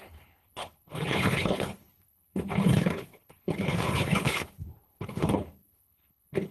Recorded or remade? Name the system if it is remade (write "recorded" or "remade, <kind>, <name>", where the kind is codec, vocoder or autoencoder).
remade, codec, HILCodec